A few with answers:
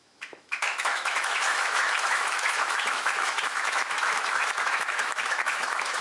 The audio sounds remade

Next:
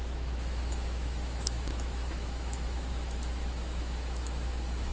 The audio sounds remade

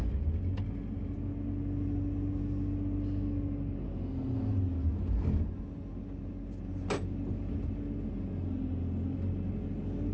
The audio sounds recorded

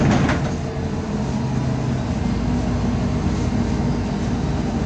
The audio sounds recorded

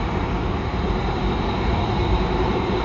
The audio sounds remade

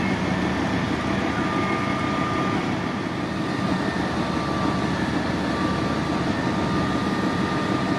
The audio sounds recorded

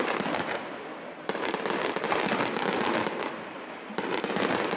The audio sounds recorded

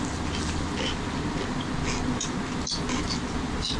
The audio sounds recorded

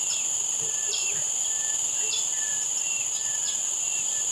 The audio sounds remade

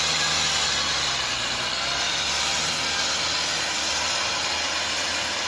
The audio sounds recorded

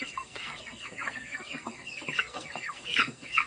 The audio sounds remade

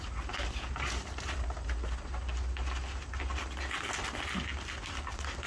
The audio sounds recorded